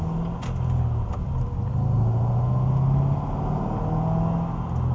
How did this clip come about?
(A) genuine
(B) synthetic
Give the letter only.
A